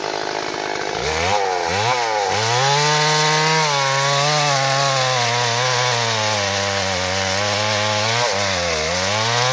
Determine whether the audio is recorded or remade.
recorded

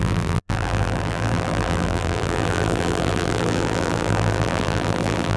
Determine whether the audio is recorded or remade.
remade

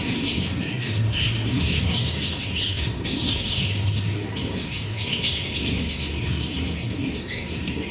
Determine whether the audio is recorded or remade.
remade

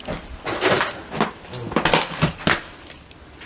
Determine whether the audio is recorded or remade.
recorded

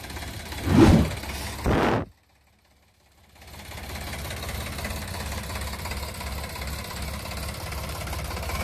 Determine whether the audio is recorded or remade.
recorded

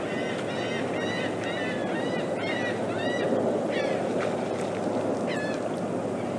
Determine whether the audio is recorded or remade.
recorded